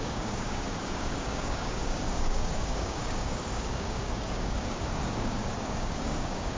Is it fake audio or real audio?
fake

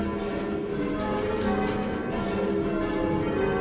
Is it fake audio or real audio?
real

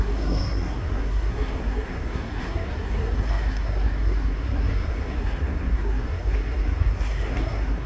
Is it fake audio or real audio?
fake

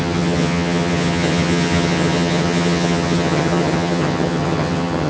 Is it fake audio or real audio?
fake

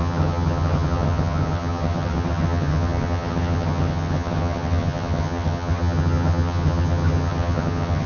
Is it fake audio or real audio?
fake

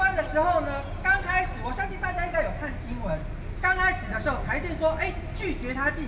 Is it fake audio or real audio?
real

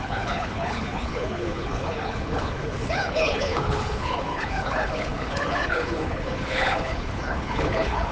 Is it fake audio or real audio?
fake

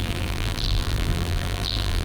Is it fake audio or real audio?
fake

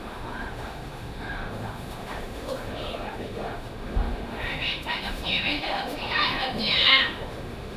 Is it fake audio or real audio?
fake